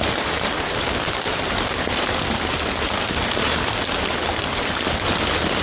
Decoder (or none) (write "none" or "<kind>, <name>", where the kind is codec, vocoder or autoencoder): none